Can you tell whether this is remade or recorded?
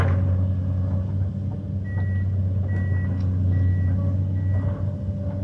recorded